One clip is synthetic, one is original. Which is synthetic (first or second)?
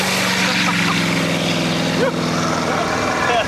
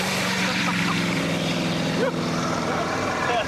second